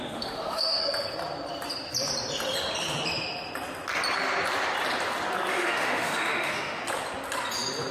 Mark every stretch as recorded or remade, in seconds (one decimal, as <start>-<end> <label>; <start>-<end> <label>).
0.0-0.8 remade; 0.8-5.5 recorded; 5.5-6.8 remade; 6.8-7.9 recorded